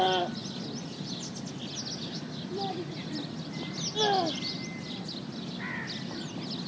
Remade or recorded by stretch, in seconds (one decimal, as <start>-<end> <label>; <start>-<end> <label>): 0.0-6.7 recorded